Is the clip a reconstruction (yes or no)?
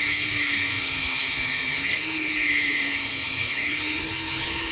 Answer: yes